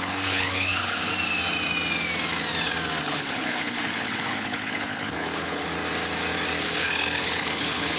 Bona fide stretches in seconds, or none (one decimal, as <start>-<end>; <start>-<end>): 1.1-3.0; 5.7-6.6